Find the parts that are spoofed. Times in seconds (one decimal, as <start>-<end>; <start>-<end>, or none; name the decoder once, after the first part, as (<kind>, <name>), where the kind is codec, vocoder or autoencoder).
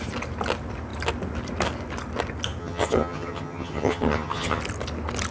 2.6-4.6 (vocoder, HiFi-GAN)